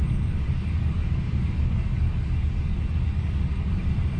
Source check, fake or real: fake